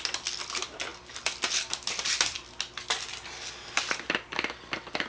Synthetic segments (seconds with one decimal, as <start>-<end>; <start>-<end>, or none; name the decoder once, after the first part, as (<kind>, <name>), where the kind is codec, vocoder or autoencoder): none